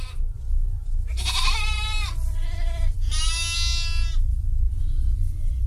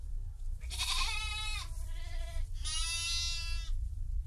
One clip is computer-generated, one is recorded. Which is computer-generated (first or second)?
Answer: second